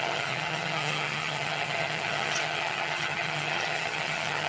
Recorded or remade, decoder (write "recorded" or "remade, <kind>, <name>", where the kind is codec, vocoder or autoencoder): remade, vocoder, HiFi-GAN